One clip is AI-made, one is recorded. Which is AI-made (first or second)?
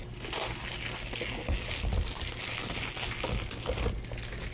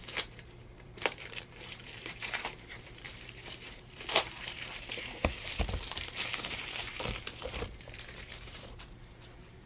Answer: second